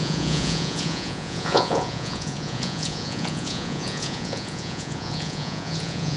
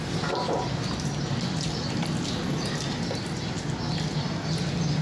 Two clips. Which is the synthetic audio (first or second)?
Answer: first